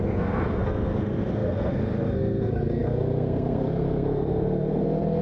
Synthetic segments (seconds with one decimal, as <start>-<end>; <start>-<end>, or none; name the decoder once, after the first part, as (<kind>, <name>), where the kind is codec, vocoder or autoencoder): 0.0-5.2 (codec, SNAC)